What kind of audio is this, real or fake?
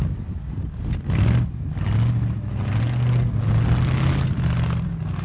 real